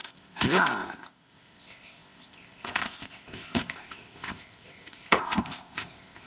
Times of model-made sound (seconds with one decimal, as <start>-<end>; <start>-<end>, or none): 0.0-6.3